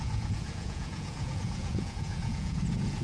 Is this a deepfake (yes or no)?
yes